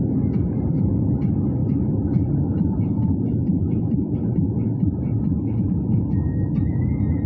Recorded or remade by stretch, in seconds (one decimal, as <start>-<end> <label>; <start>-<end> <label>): 0.0-1.6 recorded; 1.6-6.0 remade; 6.0-7.3 recorded